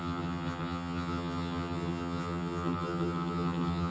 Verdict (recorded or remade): remade